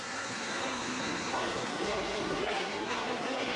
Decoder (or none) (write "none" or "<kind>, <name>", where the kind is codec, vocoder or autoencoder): codec, SNAC